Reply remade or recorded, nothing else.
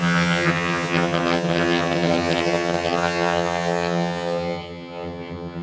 remade